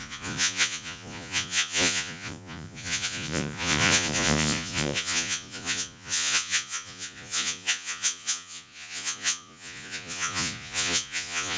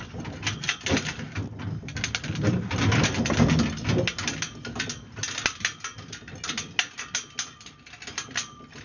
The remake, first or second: first